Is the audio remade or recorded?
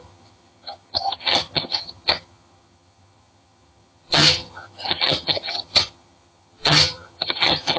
remade